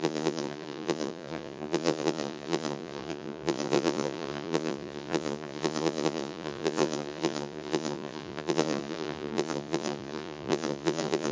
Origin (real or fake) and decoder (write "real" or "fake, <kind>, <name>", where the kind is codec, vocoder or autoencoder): fake, vocoder, Vocos